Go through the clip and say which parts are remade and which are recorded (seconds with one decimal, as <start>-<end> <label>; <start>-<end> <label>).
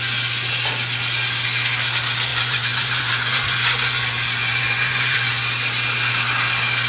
0.0-2.3 recorded; 2.3-5.3 remade; 5.3-6.9 recorded